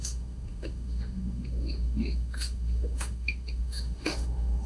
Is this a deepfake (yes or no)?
yes